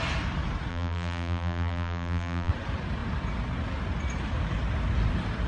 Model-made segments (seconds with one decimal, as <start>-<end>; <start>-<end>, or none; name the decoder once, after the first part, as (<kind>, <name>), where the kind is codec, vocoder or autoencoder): 0.7-2.5 (vocoder, BigVGAN v2)